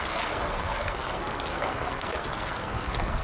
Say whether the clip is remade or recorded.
remade